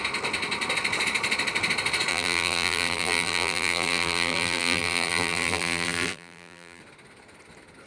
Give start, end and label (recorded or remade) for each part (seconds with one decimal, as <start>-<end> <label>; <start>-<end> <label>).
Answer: 0.0-2.1 recorded; 2.1-6.8 remade; 6.8-7.9 recorded